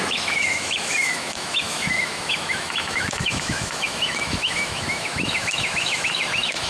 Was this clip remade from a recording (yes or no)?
yes